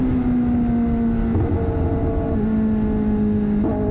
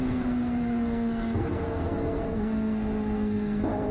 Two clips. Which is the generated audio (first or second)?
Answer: second